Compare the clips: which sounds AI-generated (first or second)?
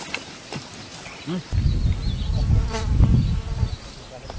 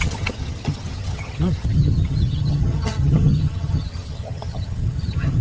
second